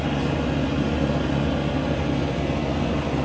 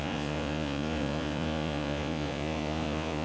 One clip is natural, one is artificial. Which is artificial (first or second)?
second